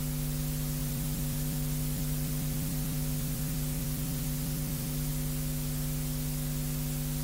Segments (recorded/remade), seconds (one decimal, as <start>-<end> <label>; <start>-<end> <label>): 0.0-0.8 recorded; 0.8-5.1 remade; 5.1-7.2 recorded